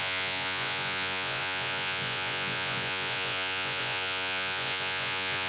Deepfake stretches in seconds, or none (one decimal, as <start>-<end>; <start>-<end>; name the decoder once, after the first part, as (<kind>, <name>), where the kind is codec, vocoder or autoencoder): 0.0-5.5 (vocoder, Vocos)